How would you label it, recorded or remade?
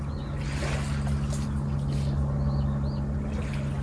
recorded